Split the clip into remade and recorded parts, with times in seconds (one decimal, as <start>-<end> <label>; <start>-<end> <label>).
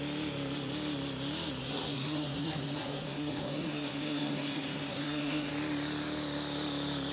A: 0.0-1.6 recorded; 1.6-5.5 remade; 5.5-7.1 recorded